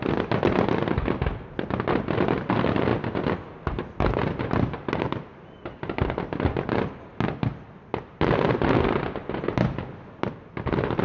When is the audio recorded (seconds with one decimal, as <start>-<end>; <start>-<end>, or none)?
0.0-11.0